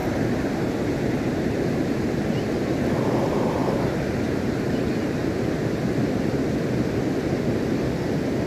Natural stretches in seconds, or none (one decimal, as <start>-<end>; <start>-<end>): 0.6-3.6; 5.5-8.5